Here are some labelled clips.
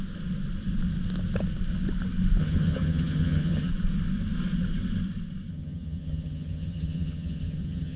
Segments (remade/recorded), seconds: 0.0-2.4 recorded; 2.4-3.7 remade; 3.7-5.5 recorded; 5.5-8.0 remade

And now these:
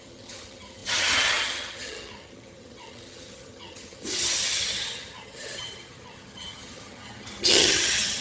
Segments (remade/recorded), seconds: 0.0-8.2 remade

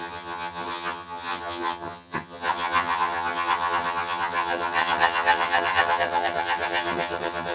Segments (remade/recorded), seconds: 0.0-7.5 remade